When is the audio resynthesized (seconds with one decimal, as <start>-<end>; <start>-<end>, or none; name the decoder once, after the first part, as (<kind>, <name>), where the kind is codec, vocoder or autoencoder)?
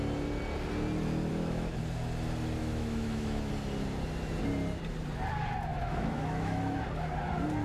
1.3-1.8 (autoencoder, DAC-VAE); 2.6-3.5; 5.7-6.8